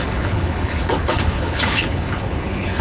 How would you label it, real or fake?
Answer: fake